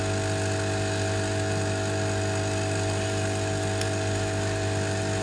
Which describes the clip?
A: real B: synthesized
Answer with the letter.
A